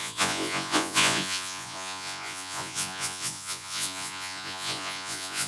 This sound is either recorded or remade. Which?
remade